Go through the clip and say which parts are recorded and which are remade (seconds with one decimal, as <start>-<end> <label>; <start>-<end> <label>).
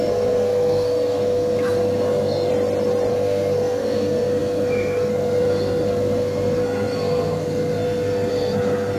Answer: 0.0-2.5 remade; 2.5-3.1 recorded; 3.1-9.0 remade